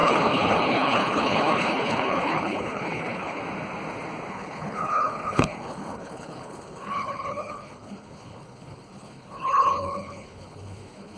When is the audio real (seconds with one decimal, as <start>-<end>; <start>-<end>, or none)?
3.4-4.3